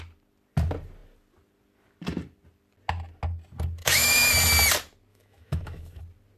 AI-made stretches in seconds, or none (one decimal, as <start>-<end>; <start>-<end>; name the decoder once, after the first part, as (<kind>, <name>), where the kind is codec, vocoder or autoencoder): 3.8-4.3 (autoencoder, DAC-VAE); 5.1-6.0